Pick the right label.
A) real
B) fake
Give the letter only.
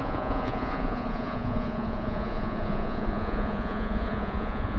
B